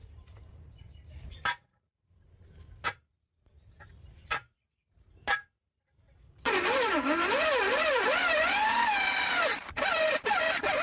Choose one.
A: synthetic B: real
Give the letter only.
A